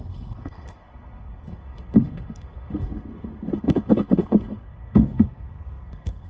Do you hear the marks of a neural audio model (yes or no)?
yes